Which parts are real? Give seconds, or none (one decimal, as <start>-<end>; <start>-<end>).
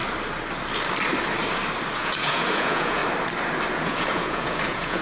0.0-2.0; 3.0-3.7